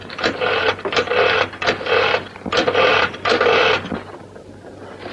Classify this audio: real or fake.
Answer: real